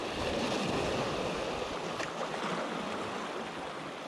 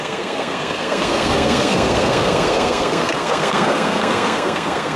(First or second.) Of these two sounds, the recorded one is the first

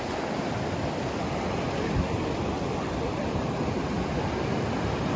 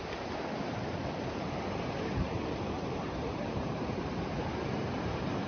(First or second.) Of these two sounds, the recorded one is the first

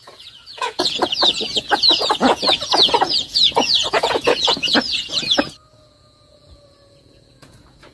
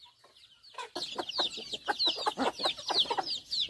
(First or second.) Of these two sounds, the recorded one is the second